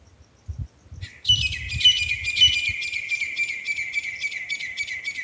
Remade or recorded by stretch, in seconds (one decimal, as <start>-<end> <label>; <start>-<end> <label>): 0.0-5.2 recorded